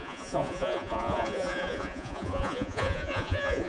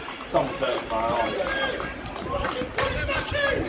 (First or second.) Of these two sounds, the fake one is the first